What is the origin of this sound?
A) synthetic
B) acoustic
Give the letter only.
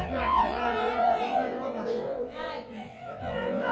A